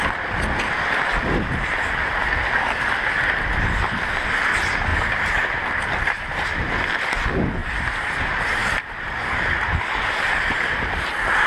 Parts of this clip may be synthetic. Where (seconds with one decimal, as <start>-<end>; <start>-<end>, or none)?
4.9-6.7; 7.6-9.8

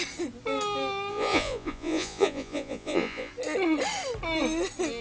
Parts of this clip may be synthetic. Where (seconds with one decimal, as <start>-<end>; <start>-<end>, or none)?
1.1-3.3

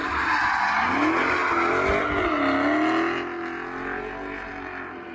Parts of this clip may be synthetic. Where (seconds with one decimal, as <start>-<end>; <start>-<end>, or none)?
none

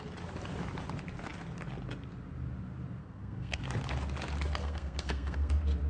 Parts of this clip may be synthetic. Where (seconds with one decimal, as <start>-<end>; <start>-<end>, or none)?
3.0-3.6; 4.6-5.5

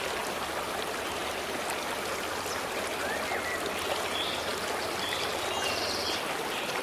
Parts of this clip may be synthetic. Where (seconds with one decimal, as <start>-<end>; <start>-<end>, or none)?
1.2-3.1; 4.5-5.3

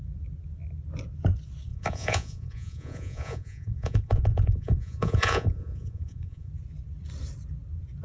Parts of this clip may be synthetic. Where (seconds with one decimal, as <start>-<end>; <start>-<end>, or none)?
1.7-6.5